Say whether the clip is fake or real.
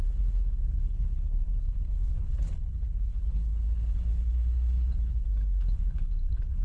fake